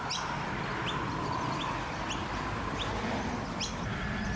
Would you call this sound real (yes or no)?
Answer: yes